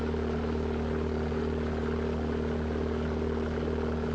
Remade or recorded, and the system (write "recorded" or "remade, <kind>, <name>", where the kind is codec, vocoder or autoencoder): recorded